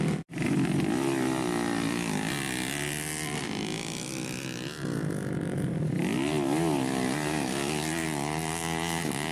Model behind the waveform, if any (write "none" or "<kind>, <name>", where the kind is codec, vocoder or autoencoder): none